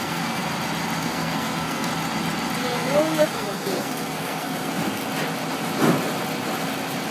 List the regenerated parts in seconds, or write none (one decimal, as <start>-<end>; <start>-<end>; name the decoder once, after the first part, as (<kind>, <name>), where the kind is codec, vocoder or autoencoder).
0.0-0.4 (codec, SNAC); 1.0-1.9; 2.6-5.0